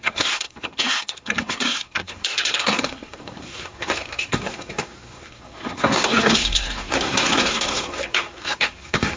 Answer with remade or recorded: remade